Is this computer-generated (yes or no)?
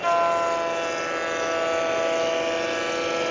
no